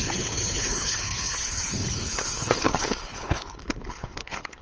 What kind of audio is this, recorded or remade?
remade